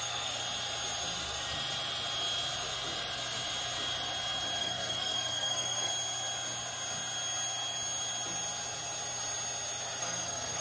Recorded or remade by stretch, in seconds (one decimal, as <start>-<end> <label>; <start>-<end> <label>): 0.0-0.4 remade; 0.4-4.6 recorded; 4.6-5.9 remade; 5.9-10.0 recorded; 10.0-10.6 remade